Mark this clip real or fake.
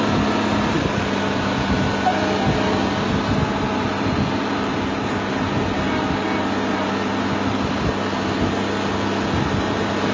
real